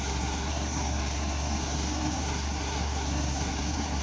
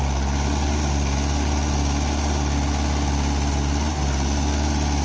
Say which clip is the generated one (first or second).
first